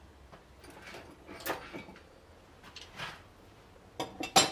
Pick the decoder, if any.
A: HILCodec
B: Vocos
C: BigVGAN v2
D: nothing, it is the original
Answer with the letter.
D